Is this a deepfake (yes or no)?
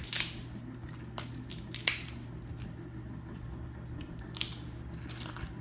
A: no